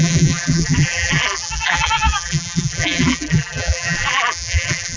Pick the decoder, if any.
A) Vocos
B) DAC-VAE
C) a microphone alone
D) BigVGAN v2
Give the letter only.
D